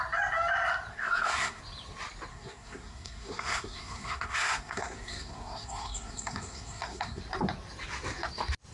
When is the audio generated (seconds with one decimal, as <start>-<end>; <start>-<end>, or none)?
0.9-1.6; 2.3-7.2